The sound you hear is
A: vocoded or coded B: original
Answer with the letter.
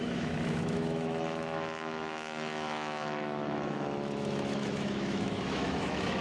A